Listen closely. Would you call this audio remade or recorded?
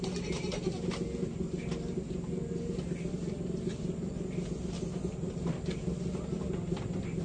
recorded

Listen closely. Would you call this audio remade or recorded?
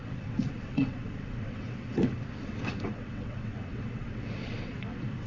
remade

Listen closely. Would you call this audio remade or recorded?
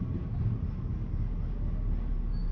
recorded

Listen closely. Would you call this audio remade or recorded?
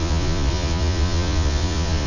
remade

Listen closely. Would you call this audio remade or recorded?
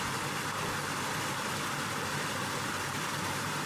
recorded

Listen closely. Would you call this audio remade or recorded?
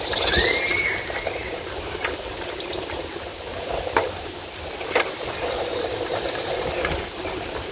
remade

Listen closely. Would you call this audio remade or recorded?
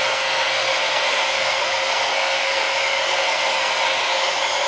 remade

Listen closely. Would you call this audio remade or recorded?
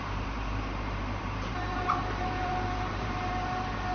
remade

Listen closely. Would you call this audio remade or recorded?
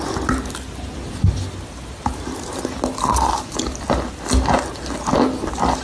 recorded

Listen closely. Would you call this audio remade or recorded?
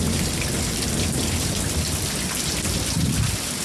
recorded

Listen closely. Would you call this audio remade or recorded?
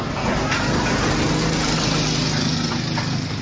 recorded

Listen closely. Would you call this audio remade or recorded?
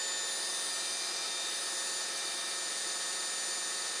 recorded